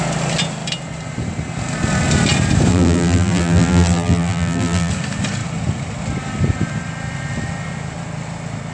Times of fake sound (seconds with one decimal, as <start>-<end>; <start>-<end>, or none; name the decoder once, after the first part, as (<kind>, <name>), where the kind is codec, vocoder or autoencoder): 2.7-4.9 (vocoder, BigVGAN v2)